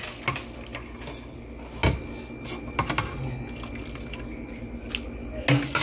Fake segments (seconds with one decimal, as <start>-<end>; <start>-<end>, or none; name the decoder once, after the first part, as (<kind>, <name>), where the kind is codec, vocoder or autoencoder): none